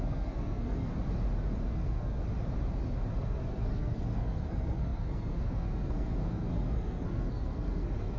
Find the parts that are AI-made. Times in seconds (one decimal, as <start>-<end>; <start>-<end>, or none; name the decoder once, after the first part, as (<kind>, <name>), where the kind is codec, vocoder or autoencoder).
0.0-0.9 (codec, SNAC); 1.7-2.2; 3.1-8.2